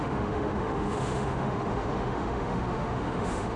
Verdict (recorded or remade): remade